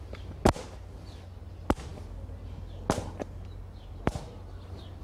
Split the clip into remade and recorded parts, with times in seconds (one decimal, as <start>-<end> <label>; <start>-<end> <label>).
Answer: 0.0-5.0 recorded